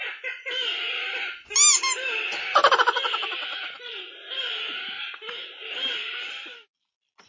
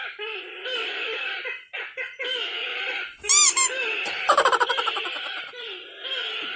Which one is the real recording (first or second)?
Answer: first